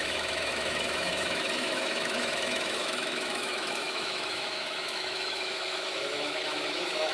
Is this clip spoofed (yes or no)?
yes